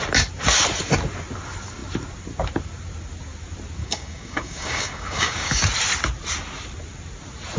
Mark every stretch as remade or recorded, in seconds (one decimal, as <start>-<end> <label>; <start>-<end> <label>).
0.0-3.8 recorded; 3.8-5.6 remade; 5.6-7.6 recorded